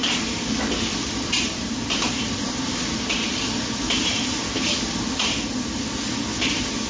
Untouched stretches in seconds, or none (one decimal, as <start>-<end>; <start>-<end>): 2.7-6.9